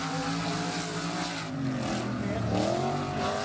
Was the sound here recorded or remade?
recorded